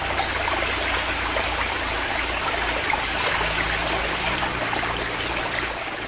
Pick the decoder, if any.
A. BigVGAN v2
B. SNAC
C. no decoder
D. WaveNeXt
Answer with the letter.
C